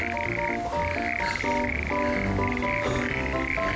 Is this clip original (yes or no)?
yes